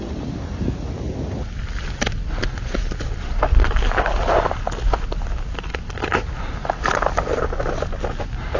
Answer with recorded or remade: recorded